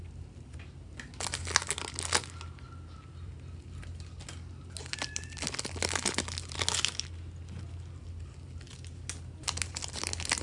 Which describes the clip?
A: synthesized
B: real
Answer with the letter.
B